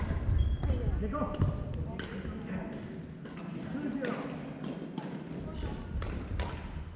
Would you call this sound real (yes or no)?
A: yes